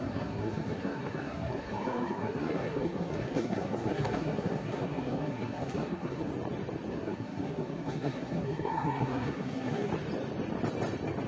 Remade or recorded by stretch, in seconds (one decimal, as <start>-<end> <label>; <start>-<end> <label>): 0.0-6.3 remade; 6.3-6.9 recorded; 6.9-9.9 remade; 9.9-11.3 recorded